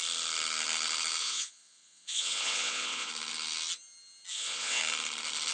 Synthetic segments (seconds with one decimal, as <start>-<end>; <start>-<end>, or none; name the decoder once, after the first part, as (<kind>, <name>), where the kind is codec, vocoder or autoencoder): 1.2-3.1 (vocoder, WaveNeXt); 4.3-4.8